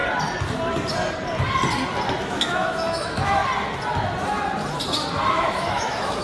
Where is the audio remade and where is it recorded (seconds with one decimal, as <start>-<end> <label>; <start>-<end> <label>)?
0.0-2.2 recorded; 2.2-3.4 remade; 3.4-5.3 recorded; 5.3-6.2 remade